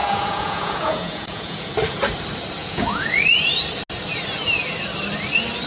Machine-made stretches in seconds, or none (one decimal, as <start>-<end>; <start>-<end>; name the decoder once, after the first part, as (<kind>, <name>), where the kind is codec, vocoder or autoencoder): 0.0-1.7 (vocoder, Vocos); 2.6-3.2